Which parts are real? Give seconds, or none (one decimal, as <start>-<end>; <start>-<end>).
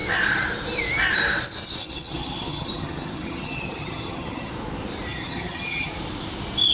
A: 0.0-1.8; 4.5-5.1; 5.9-6.7